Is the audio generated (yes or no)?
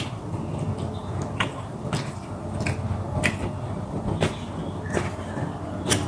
no